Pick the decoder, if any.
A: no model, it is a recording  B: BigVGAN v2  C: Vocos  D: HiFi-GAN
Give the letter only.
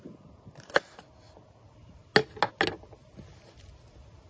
A